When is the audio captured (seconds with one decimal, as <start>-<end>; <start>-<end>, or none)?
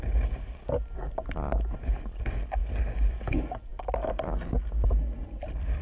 0.0-5.2